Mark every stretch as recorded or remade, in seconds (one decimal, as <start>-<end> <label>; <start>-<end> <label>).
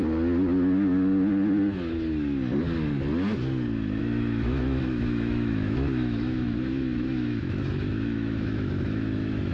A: 0.0-4.0 recorded; 4.0-9.5 remade